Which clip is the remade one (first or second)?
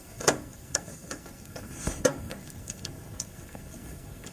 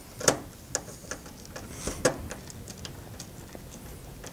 first